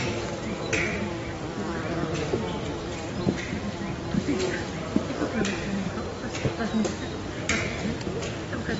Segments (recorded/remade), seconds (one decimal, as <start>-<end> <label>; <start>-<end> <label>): 0.0-8.8 recorded